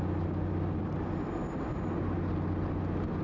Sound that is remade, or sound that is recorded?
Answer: recorded